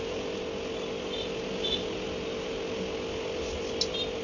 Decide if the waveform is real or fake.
real